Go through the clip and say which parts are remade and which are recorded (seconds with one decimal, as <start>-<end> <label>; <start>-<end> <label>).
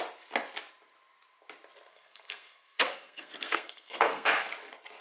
0.0-1.9 recorded; 1.9-4.5 remade; 4.5-5.0 recorded